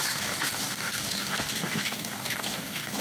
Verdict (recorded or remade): remade